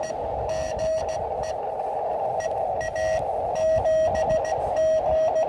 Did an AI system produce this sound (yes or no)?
no